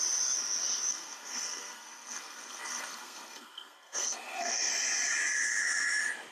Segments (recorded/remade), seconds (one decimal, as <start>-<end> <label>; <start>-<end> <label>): 0.0-0.9 recorded; 0.9-4.7 remade; 4.7-6.3 recorded